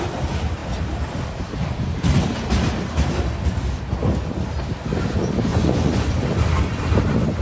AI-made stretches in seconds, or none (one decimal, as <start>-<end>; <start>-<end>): 5.5-6.2